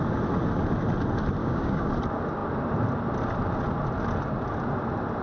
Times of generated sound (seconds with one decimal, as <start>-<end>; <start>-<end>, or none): 1.4-1.9